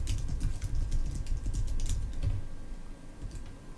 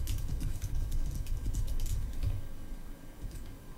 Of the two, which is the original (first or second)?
first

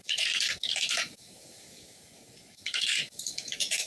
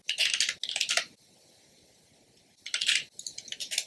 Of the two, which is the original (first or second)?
second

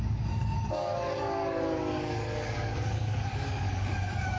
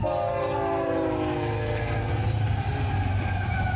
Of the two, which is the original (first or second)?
second